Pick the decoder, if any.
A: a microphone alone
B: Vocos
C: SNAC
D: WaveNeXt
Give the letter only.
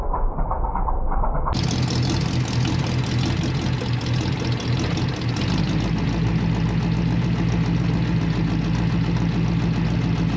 A